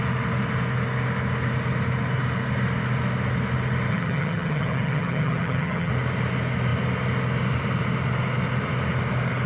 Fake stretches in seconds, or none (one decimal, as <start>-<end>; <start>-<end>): 3.9-5.9